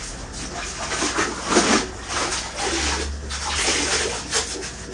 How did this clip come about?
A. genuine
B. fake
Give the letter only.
A